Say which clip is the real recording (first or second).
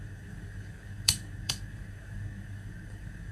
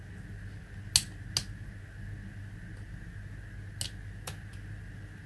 second